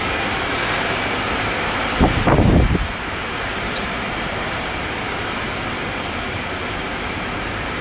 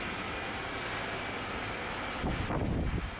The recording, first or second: second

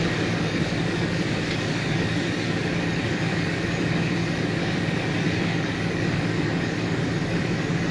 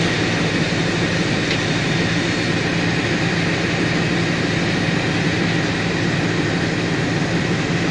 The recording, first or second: second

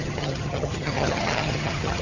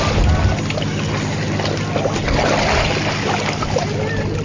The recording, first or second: second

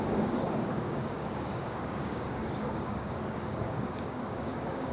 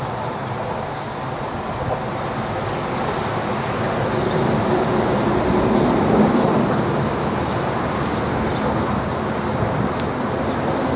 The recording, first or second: second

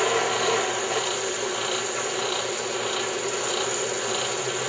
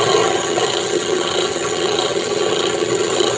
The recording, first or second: first